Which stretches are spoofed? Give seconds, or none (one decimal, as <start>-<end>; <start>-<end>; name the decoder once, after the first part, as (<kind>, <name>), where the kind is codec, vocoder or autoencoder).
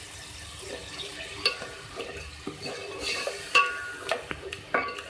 none